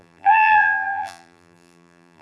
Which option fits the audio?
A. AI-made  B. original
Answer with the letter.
A